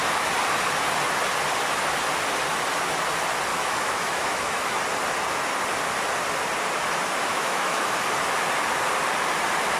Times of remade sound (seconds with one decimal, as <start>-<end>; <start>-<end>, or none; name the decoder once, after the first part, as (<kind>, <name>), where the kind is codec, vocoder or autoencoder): 3.5-4.8 (autoencoder, DAC-VAE); 7.3-8.0